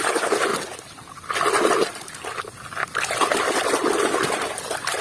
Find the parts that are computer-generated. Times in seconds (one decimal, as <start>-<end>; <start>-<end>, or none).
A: 0.0-0.5; 1.7-2.8; 3.4-5.0